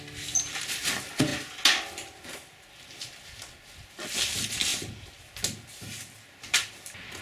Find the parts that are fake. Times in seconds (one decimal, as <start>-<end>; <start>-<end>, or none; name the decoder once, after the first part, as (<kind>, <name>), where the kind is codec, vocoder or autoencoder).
none